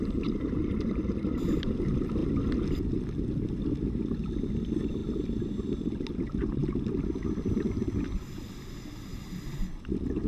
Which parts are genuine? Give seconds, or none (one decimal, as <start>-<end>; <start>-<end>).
0.0-2.2; 3.0-9.1; 9.6-10.3